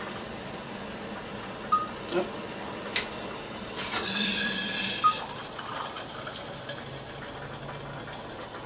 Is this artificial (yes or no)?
no